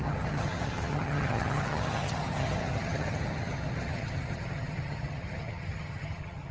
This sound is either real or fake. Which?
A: fake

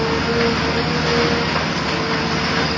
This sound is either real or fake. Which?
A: real